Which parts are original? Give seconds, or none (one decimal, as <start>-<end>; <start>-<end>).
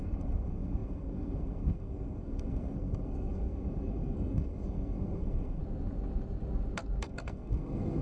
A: 5.6-7.0